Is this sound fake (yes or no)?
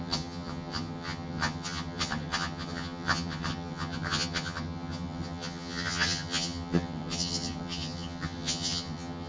yes